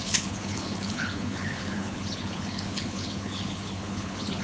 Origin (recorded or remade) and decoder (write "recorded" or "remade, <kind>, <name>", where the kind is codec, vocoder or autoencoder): remade, codec, HILCodec